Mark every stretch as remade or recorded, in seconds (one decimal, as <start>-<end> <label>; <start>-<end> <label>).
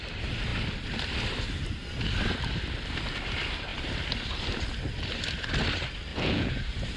0.0-6.1 recorded; 6.1-6.6 remade; 6.6-7.0 recorded